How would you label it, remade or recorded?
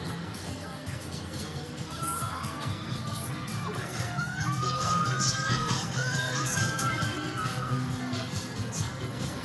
remade